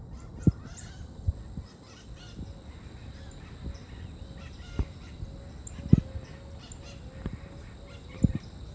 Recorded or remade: recorded